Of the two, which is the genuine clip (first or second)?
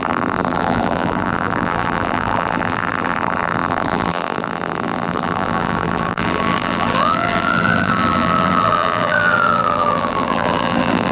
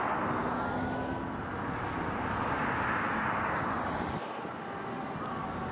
second